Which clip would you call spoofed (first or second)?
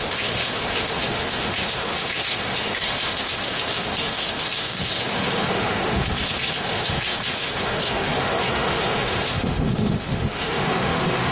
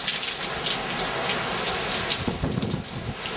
first